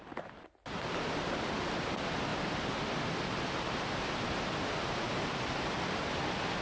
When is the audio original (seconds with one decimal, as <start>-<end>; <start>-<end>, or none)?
0.0-6.6

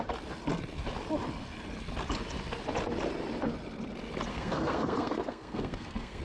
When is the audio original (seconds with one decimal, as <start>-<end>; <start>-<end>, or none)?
0.0-4.3

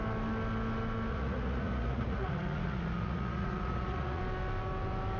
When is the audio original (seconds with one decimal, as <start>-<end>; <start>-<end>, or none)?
0.0-1.1; 4.2-5.2

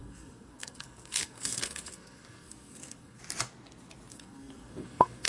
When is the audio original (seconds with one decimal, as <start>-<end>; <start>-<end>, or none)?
3.2-4.1